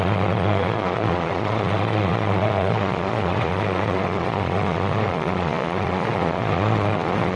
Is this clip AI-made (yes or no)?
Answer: yes